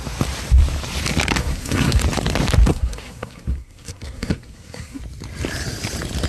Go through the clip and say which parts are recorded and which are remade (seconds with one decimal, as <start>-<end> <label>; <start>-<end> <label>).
0.0-1.4 recorded; 1.4-2.0 remade; 2.0-2.7 recorded; 2.7-5.0 remade; 5.0-6.3 recorded